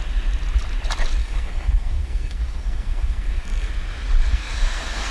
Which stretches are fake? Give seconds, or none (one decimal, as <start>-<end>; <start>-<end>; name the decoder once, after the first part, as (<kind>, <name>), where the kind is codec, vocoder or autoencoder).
1.2-3.7 (codec, SNAC); 4.3-5.1